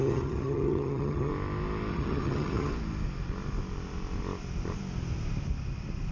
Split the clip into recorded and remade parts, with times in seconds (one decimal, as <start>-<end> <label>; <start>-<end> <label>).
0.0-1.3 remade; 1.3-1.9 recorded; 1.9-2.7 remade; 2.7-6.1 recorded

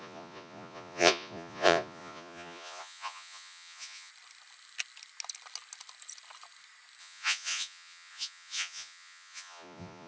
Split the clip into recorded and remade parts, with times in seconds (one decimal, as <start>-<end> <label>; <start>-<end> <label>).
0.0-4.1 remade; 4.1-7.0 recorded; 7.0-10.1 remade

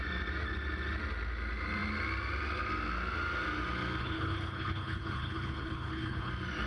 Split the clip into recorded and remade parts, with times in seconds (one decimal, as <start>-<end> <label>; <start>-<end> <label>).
0.0-4.0 recorded; 4.0-6.3 remade; 6.3-6.7 recorded

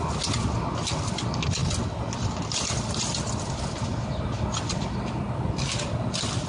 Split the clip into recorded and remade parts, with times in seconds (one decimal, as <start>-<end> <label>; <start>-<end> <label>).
0.0-6.5 recorded

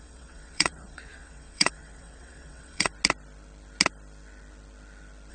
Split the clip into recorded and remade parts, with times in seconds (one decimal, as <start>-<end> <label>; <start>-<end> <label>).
0.0-2.9 remade; 2.9-5.3 recorded

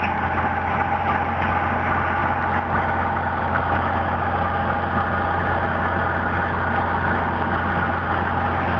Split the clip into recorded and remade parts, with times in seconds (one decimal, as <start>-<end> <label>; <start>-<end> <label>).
0.0-8.8 recorded

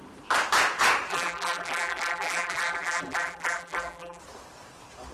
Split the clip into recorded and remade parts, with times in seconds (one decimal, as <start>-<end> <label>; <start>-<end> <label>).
0.0-1.1 recorded; 1.1-4.2 remade; 4.2-5.1 recorded

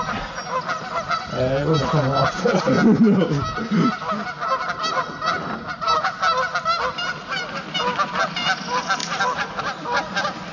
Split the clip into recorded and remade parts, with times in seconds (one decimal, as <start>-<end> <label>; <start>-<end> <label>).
0.0-9.0 recorded; 9.0-9.6 remade; 9.6-10.5 recorded